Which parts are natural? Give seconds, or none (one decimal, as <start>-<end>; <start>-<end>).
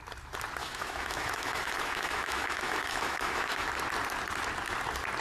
0.0-0.6; 3.7-5.2